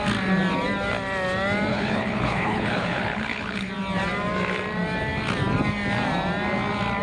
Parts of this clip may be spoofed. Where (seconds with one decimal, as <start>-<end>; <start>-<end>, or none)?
1.7-3.7